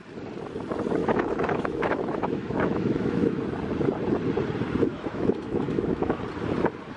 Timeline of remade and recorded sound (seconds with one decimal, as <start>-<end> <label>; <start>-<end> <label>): 0.0-1.0 recorded; 1.0-3.4 remade; 3.4-4.9 recorded; 4.9-6.2 remade; 6.2-7.0 recorded